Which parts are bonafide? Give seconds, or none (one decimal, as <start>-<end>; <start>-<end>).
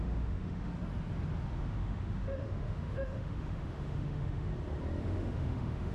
0.7-1.6; 4.5-5.0